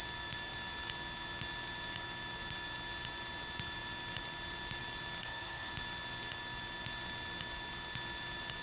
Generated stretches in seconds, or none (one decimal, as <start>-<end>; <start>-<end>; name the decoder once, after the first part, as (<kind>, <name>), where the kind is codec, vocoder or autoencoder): 5.2-5.7 (codec, SNAC)